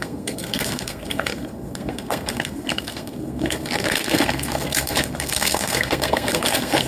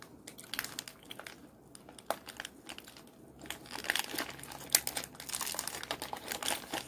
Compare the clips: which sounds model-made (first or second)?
first